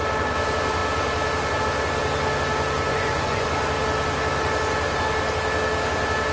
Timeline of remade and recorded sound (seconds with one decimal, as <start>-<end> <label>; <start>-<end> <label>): 0.0-2.9 recorded; 2.9-3.5 remade; 3.5-6.3 recorded